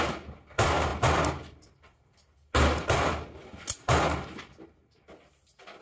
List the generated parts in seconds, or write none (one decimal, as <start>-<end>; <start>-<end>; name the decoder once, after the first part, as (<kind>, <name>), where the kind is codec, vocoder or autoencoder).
none